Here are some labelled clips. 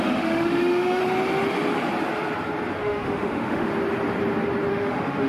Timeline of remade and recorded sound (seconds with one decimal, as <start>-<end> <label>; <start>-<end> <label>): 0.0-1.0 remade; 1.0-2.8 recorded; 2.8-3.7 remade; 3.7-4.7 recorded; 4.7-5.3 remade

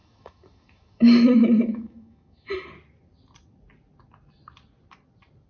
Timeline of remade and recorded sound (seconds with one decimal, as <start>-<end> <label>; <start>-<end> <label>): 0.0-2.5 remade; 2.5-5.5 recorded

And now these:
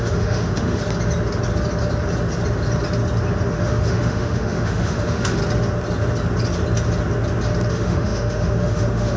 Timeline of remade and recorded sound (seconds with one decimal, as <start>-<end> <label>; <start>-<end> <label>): 0.0-0.8 remade; 0.8-3.5 recorded; 3.5-5.4 remade; 5.4-7.7 recorded; 7.7-9.2 remade

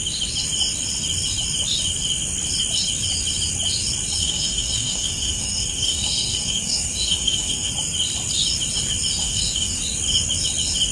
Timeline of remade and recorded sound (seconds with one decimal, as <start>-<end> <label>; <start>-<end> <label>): 0.0-4.2 recorded; 4.2-7.7 remade; 7.7-9.2 recorded; 9.2-9.8 remade; 9.8-10.9 recorded

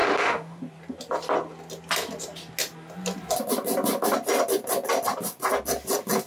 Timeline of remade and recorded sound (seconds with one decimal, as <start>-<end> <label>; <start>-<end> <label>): 0.0-0.6 remade; 0.6-6.3 recorded

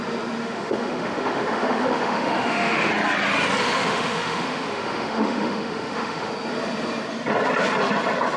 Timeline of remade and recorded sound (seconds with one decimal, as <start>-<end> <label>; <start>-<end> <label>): 0.0-0.4 recorded; 0.4-2.9 remade; 2.9-3.6 recorded; 3.6-6.3 remade; 6.3-8.4 recorded

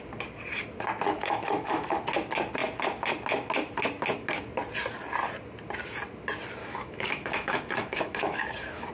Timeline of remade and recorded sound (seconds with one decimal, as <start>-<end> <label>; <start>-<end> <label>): 0.0-1.2 recorded; 1.2-2.0 remade; 2.0-6.6 recorded; 6.6-8.9 remade